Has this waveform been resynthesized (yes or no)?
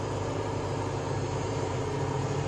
yes